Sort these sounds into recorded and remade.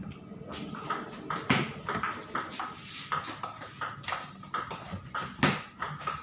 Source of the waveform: recorded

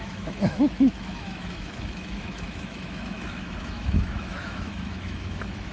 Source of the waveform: remade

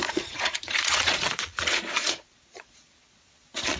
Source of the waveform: remade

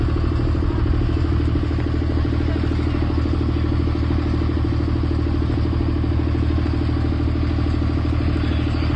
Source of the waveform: recorded